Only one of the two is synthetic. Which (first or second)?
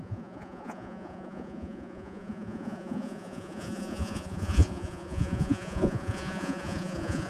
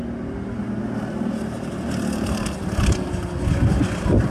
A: first